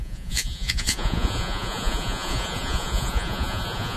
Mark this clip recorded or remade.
remade